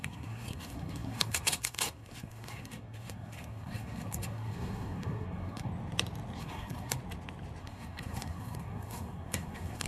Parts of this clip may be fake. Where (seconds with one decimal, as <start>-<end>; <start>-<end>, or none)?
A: 0.0-5.7; 6.4-7.0; 7.6-9.9